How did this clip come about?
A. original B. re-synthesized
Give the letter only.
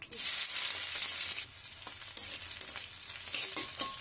A